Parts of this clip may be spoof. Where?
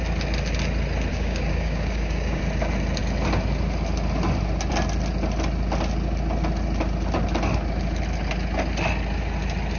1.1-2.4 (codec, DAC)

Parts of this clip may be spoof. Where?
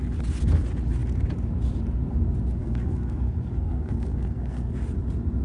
2.6-4.7 (codec, SNAC)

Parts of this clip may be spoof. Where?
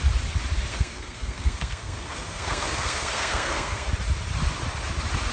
0.7-3.9 (codec, SNAC)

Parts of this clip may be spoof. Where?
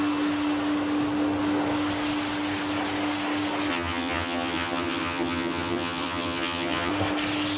3.7-6.9 (vocoder, HiFi-GAN)